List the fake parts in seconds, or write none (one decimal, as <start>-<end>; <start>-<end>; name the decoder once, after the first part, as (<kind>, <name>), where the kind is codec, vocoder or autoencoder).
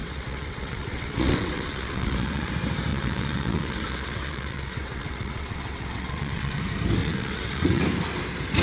0.0-2.5 (vocoder, WaveNeXt); 2.9-6.6; 7.0-7.8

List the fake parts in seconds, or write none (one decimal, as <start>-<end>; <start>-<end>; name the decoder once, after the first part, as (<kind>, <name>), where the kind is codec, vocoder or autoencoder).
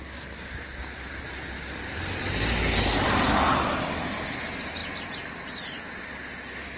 none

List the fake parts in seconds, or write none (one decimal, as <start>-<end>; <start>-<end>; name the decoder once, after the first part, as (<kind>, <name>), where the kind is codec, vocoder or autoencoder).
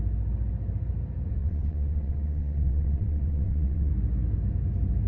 1.4-3.9 (vocoder, WaveNeXt)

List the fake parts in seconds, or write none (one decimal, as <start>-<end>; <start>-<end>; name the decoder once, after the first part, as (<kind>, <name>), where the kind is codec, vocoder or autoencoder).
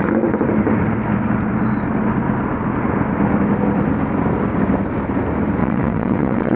5.6-6.6 (vocoder, WaveNeXt)